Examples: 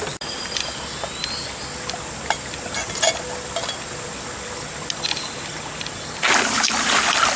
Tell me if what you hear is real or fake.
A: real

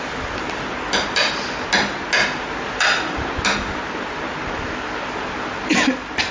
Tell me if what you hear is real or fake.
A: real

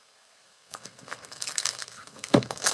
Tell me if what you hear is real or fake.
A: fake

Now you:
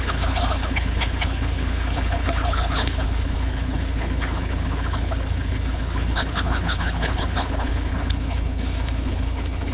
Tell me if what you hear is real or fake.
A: fake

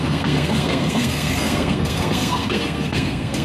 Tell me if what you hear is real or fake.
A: fake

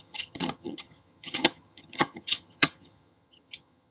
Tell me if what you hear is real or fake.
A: fake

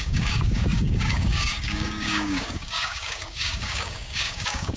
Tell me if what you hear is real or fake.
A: fake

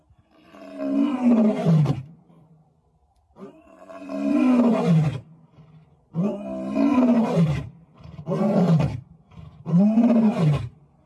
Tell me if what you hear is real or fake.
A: real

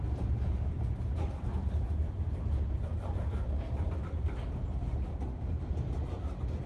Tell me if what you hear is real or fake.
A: real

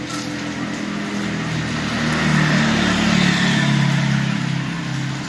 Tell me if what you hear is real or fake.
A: real